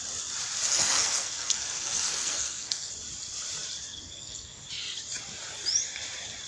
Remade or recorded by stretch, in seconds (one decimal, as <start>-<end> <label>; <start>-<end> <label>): 0.0-0.7 recorded; 0.7-2.9 remade; 2.9-3.9 recorded; 3.9-4.6 remade; 4.6-6.5 recorded